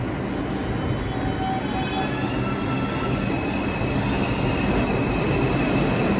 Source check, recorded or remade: recorded